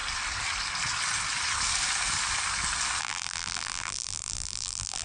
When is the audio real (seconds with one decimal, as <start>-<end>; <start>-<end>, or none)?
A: 0.0-3.0